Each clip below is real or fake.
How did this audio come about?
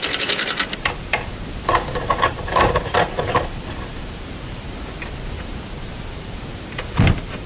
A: fake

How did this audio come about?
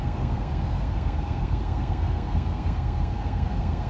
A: fake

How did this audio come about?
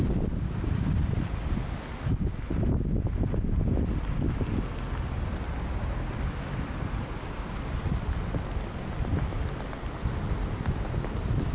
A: fake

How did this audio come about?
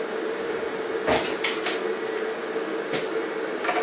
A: real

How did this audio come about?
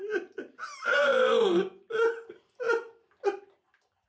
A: real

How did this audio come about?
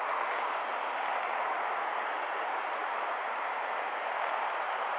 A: fake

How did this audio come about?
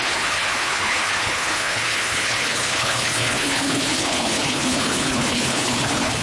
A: fake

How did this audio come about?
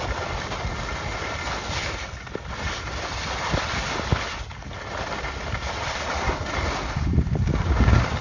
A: real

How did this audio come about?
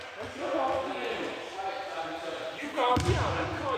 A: real